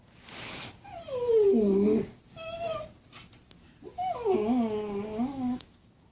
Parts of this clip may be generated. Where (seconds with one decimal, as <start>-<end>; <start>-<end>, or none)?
5.2-6.1